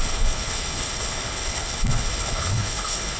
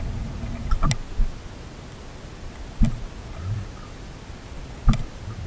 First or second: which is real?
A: second